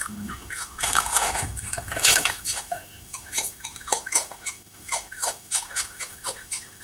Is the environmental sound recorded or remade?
remade